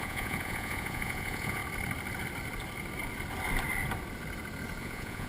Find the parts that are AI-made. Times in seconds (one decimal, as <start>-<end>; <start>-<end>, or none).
0.0-1.6; 4.8-5.3